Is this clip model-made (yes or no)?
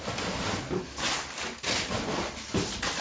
no